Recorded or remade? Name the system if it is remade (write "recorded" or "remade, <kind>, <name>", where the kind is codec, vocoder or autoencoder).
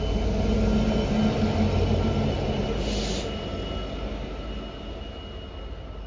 recorded